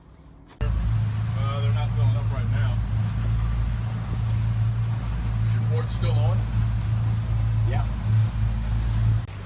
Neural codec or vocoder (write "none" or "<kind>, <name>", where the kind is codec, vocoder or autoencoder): none